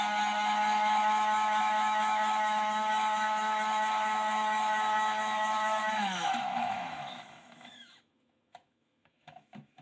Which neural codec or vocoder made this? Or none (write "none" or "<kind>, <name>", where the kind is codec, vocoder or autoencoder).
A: autoencoder, DAC-VAE